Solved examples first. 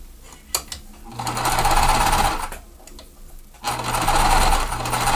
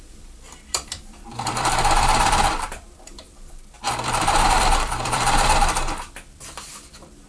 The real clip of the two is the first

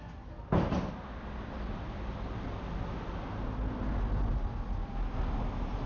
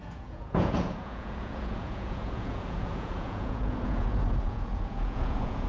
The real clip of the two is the first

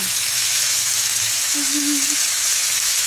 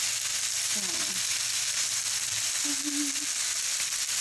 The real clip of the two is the second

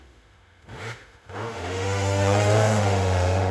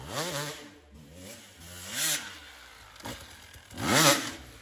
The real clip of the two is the second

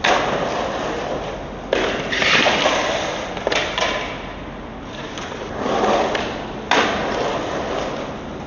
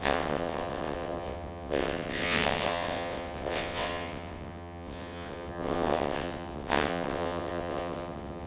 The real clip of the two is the first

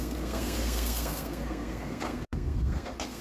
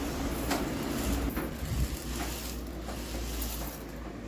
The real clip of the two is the second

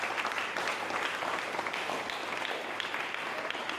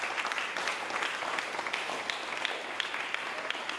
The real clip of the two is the second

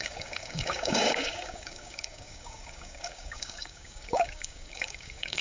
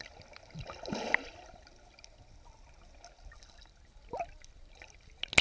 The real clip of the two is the second